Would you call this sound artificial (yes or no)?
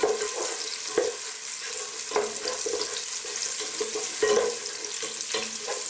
no